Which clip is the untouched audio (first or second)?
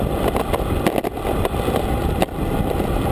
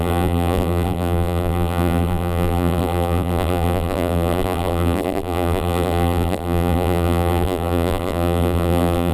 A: first